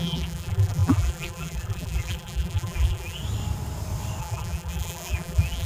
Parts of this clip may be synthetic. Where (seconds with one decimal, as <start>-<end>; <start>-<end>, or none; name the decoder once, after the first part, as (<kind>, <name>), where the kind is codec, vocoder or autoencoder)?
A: 0.0-3.2 (vocoder, BigVGAN v2); 4.2-5.7